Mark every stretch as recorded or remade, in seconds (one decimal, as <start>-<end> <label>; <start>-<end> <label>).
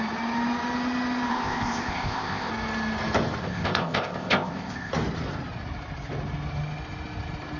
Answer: 0.0-1.3 recorded; 1.3-2.5 remade; 2.5-3.4 recorded; 3.4-4.9 remade; 4.9-7.6 recorded